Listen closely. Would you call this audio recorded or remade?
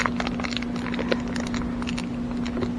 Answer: recorded